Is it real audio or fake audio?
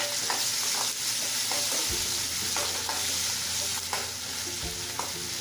real